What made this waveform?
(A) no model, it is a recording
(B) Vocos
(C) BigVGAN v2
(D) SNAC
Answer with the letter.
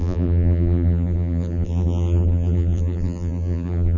C